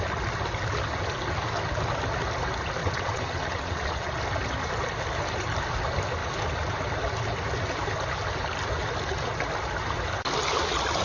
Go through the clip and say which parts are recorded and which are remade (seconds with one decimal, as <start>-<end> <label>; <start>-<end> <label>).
0.0-2.8 recorded; 2.8-4.1 remade; 4.1-11.0 recorded